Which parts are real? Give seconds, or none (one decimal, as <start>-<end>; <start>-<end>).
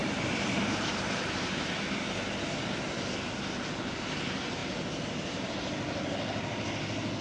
2.3-4.6; 5.5-7.2